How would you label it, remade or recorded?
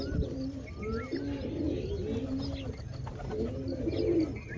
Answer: recorded